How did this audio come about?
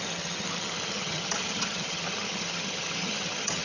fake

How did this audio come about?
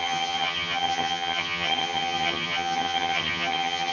fake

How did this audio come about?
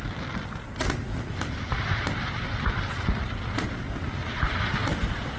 real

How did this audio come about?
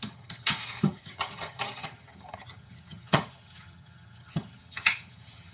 fake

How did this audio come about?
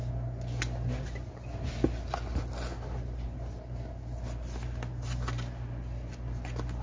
real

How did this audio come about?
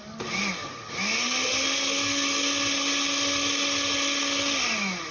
real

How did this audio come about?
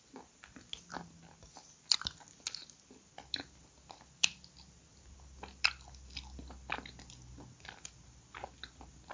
real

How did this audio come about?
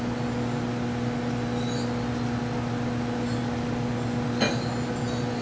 real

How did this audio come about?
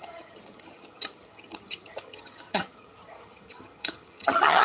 fake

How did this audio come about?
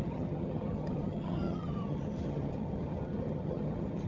fake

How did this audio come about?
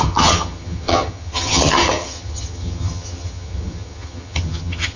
fake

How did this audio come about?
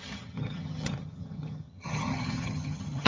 fake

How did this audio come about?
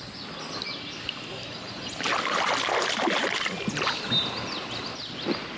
real